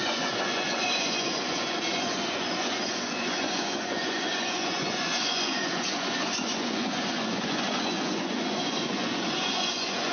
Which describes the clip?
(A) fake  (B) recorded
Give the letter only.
A